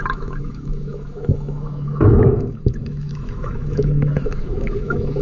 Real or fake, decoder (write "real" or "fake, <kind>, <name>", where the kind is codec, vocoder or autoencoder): fake, autoencoder, DAC-VAE